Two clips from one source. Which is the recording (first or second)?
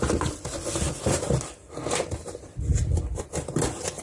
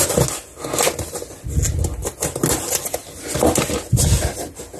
second